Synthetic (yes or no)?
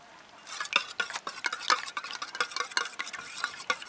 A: no